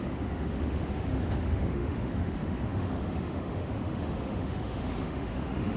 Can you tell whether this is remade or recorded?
remade